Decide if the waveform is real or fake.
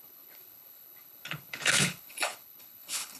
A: fake